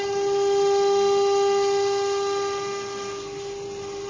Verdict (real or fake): real